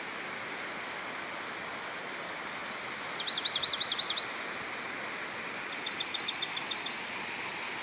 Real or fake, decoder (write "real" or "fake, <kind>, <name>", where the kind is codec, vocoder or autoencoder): real